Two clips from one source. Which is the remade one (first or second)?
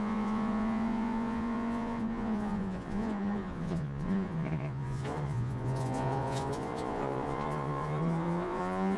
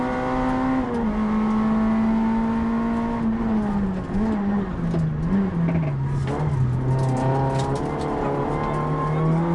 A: first